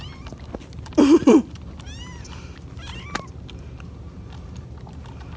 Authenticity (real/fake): real